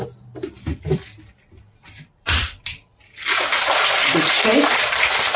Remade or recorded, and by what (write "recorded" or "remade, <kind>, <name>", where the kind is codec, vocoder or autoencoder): remade, vocoder, BigVGAN v2